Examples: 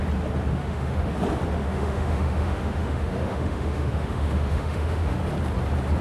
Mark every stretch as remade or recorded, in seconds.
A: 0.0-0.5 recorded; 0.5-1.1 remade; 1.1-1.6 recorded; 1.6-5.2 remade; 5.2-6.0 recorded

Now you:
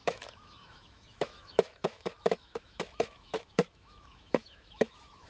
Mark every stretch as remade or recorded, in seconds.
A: 0.0-5.3 remade

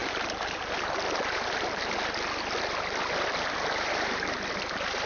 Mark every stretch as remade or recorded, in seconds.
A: 0.0-5.1 recorded